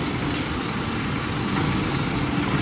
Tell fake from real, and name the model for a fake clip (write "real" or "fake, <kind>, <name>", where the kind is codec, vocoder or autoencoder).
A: real